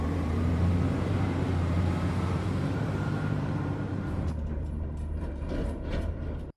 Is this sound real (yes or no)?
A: no